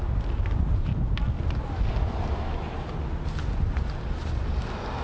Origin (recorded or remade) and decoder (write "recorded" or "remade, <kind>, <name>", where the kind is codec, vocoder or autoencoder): recorded